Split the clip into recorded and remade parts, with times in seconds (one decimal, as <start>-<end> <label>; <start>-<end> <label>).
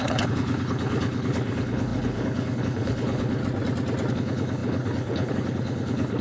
0.0-3.4 remade; 3.4-4.1 recorded; 4.1-6.2 remade